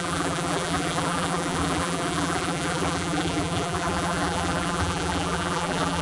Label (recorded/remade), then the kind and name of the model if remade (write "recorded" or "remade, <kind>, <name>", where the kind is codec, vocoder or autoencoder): remade, vocoder, BigVGAN v2